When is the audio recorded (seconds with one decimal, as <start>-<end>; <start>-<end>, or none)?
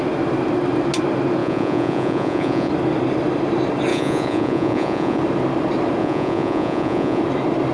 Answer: 0.0-1.4; 2.7-3.9; 5.2-6.0; 7.2-7.7